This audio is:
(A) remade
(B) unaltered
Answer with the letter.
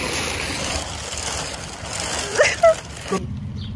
B